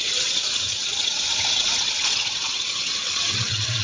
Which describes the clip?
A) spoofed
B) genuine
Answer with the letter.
A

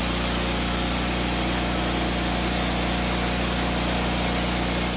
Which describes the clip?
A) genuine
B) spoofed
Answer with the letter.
A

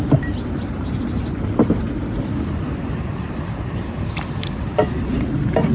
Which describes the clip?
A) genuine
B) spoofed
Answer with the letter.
B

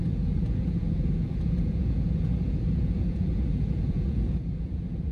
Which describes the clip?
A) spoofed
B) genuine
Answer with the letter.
A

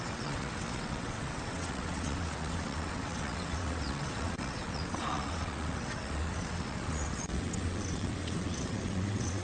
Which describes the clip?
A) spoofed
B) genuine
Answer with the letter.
A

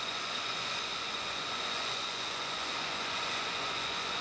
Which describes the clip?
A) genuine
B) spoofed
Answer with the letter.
B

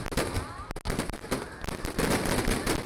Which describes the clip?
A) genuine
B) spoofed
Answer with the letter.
A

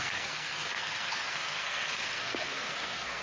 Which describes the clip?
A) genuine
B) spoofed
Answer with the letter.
B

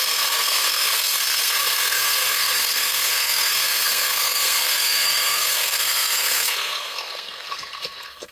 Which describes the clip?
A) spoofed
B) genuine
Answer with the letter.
A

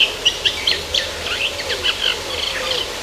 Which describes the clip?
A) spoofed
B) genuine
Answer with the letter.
B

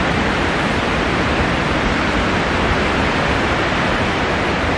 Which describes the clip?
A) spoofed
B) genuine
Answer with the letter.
A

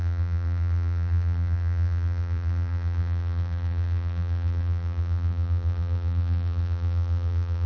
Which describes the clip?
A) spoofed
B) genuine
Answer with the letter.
A